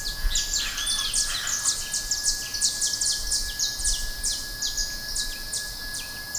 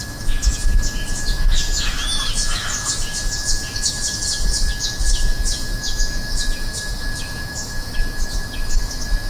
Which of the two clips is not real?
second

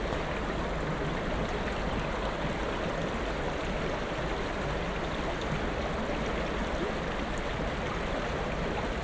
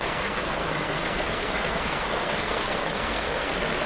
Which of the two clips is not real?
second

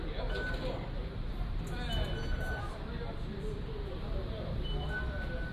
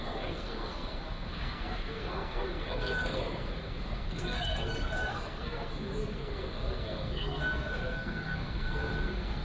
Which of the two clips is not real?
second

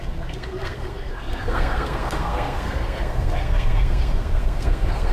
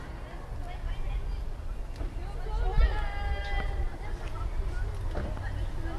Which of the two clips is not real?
first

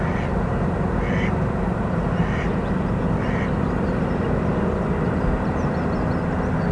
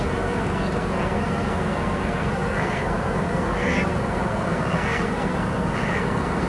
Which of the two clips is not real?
second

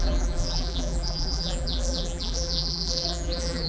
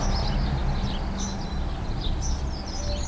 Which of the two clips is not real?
first